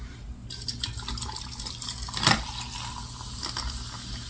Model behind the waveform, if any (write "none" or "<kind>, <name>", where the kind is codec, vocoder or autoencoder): none